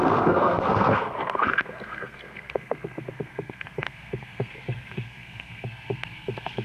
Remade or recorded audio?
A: remade